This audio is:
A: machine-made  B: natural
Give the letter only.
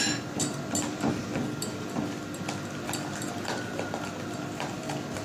B